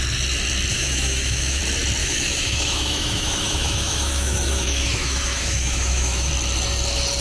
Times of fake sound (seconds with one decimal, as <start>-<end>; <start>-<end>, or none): 0.7-1.6; 2.0-6.3